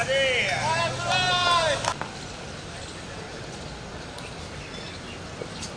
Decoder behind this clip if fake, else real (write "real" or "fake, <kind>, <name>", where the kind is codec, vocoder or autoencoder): real